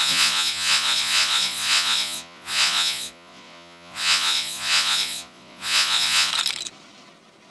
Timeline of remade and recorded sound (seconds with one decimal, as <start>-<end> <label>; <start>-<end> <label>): 0.0-6.3 remade; 6.3-7.5 recorded